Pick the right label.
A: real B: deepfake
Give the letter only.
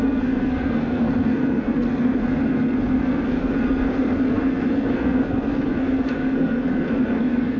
B